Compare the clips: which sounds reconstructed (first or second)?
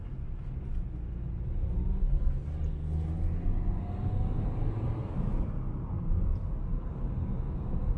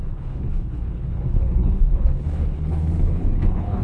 second